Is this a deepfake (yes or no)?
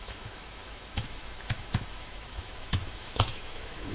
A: yes